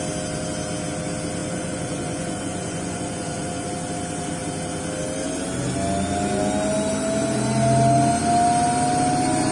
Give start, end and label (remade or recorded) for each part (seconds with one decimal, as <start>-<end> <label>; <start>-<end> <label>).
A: 0.0-1.4 recorded; 1.4-3.7 remade; 3.7-9.5 recorded